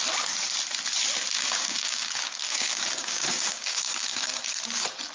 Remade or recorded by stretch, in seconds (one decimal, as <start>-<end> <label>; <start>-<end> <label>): 0.0-1.3 recorded; 1.3-4.4 remade; 4.4-5.1 recorded